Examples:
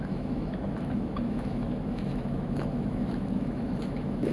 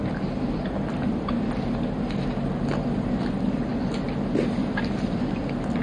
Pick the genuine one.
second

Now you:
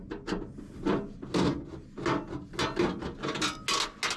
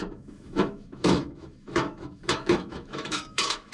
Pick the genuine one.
first